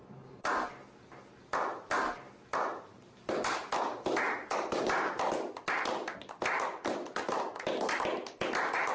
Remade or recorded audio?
recorded